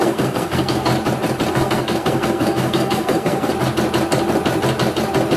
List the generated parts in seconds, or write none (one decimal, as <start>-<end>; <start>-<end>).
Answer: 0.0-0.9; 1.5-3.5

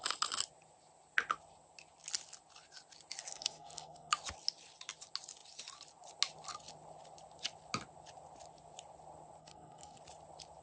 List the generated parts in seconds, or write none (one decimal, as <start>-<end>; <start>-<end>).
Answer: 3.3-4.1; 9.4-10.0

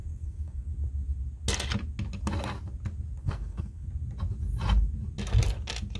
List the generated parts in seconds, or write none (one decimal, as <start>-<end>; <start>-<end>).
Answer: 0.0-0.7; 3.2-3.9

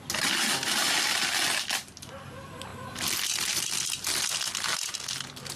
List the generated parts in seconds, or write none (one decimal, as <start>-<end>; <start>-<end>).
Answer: none

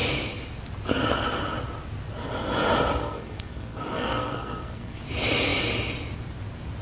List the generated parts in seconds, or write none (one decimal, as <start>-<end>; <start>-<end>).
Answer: 3.0-5.0

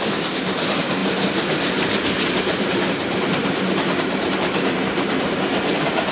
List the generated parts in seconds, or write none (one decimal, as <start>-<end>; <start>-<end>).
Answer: none

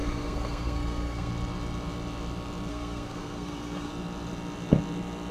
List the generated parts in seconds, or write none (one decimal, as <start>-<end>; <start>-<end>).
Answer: 0.0-1.3; 2.7-3.9